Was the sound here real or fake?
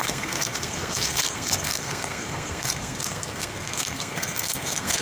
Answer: fake